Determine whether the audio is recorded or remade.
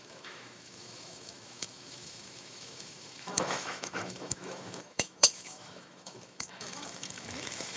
remade